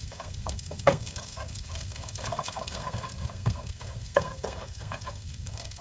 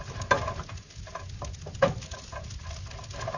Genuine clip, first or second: second